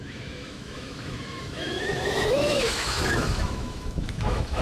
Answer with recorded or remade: remade